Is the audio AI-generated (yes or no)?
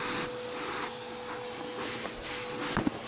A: no